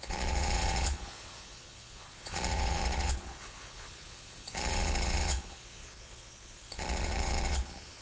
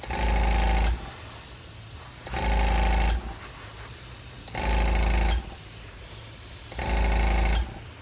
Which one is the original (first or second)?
second